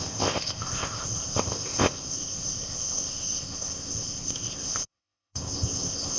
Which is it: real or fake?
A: fake